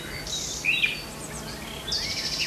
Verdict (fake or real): real